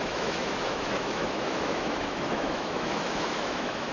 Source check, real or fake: fake